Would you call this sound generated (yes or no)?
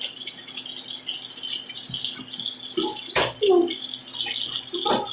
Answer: no